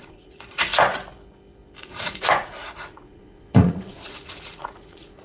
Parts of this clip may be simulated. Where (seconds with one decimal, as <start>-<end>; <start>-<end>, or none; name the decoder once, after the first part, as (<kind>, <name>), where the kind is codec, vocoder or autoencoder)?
0.0-0.7 (vocoder, Vocos); 1.8-5.2